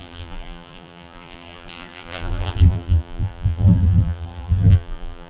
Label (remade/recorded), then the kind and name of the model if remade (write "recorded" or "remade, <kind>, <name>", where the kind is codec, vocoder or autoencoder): remade, vocoder, BigVGAN v2